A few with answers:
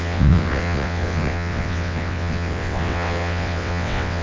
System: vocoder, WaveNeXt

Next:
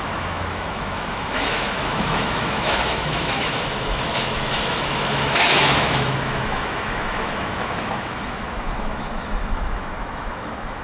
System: autoencoder, DAC-VAE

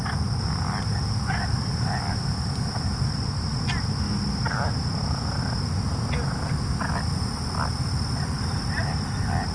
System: none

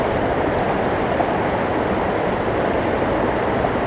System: none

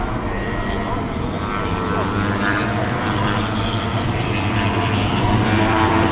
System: vocoder, BigVGAN v2